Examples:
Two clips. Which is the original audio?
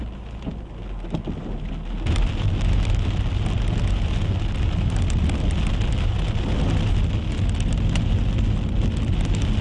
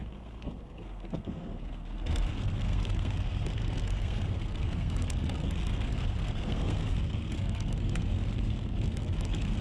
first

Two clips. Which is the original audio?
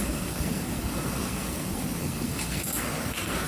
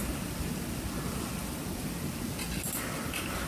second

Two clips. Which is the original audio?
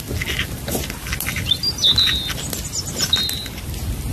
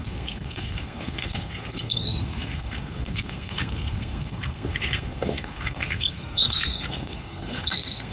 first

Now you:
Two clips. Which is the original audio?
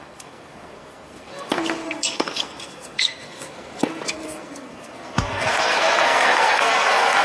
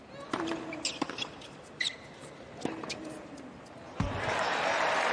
second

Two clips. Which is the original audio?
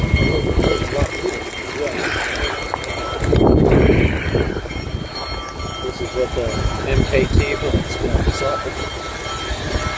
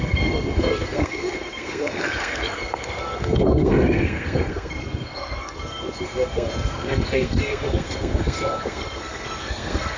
first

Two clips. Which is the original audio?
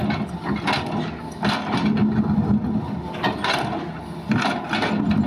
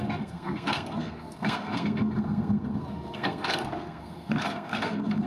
first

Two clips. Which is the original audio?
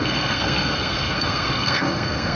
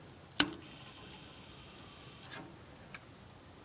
second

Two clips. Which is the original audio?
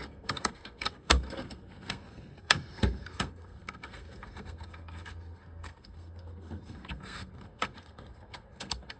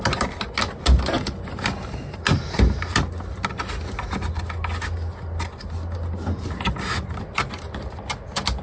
second